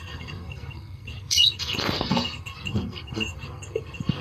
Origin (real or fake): fake